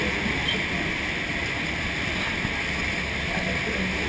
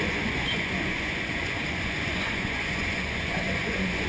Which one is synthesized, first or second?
second